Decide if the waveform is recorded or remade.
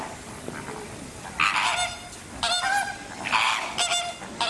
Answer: recorded